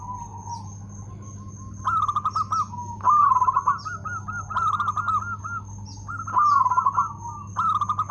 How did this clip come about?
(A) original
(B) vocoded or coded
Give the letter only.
A